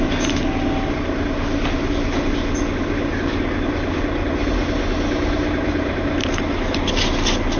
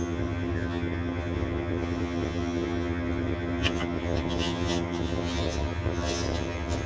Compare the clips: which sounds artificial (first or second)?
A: second